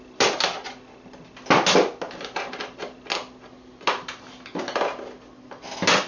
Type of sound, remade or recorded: recorded